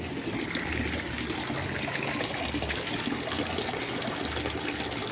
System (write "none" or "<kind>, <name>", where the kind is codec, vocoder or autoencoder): none